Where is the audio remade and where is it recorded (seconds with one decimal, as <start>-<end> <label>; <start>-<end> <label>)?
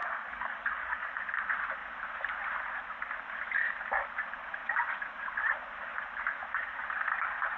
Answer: 0.0-1.1 remade; 1.1-7.6 recorded